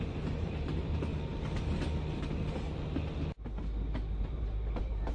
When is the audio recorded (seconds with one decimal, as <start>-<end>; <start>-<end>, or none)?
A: 1.1-4.2

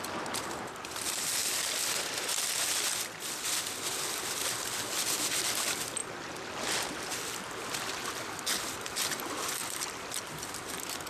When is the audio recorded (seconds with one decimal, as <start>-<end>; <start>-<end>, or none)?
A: 0.0-11.1

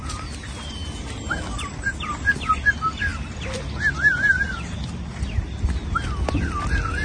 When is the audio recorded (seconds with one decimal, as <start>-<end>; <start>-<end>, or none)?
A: 0.0-7.0

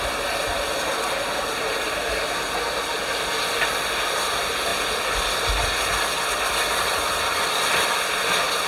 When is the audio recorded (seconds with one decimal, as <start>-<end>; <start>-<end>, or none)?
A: 0.0-8.7

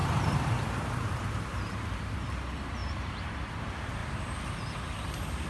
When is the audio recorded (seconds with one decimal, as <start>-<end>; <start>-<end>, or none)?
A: 2.0-2.8; 3.6-5.5

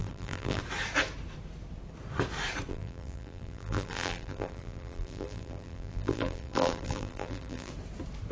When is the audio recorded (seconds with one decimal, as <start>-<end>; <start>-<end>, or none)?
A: 0.6-2.7; 7.7-8.3

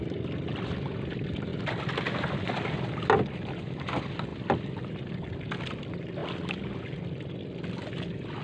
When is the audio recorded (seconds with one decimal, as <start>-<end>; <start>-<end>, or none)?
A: 0.0-1.5; 2.9-4.3; 4.9-8.4

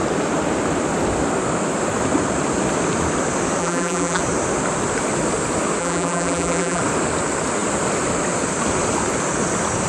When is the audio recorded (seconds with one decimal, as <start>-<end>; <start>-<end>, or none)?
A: 0.0-3.6; 4.2-5.8; 6.8-9.9